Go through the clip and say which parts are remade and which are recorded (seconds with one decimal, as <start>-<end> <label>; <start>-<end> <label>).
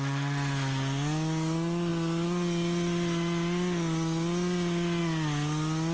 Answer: 0.0-5.9 recorded